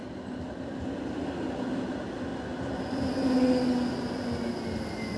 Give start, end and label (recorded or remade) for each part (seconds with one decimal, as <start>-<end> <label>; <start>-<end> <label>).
0.0-5.2 recorded